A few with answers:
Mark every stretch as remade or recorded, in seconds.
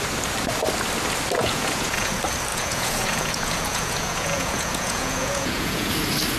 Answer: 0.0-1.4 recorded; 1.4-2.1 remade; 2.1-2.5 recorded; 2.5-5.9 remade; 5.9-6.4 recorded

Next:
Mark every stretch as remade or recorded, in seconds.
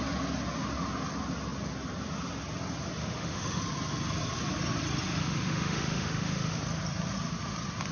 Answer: 0.0-3.0 recorded; 3.0-3.6 remade; 3.6-5.2 recorded; 5.2-6.6 remade; 6.6-7.9 recorded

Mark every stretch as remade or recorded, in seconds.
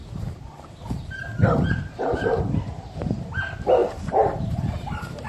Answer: 0.0-3.2 remade; 3.2-3.8 recorded; 3.8-5.3 remade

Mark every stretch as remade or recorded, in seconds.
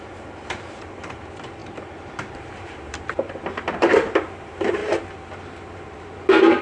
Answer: 0.0-4.8 remade; 4.8-6.6 recorded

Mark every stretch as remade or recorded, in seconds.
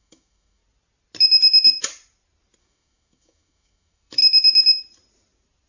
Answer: 0.0-0.6 remade; 0.6-2.6 recorded; 2.6-4.2 remade; 4.2-5.7 recorded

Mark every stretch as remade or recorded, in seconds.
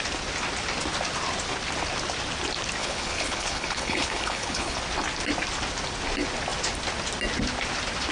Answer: 0.0-2.8 recorded; 2.8-4.8 remade; 4.8-8.1 recorded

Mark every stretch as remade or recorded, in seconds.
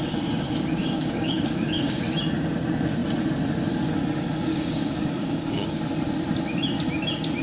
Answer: 0.0-0.8 recorded; 0.8-2.0 remade; 2.0-4.5 recorded; 4.5-5.8 remade; 5.8-7.4 recorded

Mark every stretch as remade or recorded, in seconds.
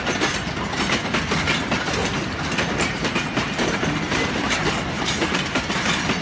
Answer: 0.0-2.0 recorded; 2.0-5.7 remade; 5.7-6.2 recorded